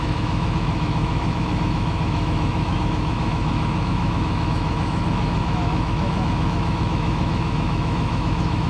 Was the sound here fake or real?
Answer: fake